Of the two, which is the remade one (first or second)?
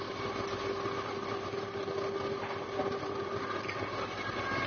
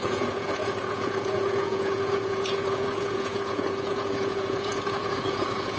second